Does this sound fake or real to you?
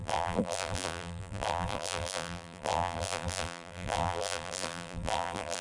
fake